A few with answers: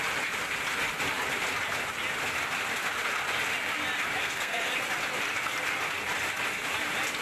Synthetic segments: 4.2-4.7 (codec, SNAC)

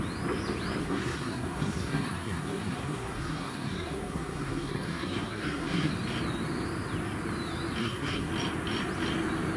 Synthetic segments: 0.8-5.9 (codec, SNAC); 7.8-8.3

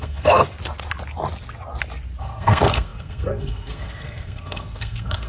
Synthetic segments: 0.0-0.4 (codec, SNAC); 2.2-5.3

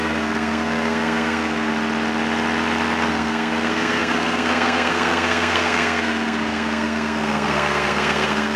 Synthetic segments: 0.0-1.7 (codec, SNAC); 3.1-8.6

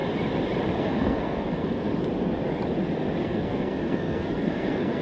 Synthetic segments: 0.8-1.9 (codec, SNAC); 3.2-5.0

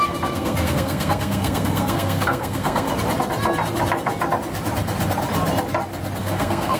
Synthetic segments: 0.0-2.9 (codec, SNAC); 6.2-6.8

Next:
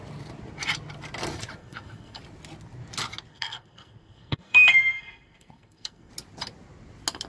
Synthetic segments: 1.6-2.2 (codec, SNAC); 3.3-6.1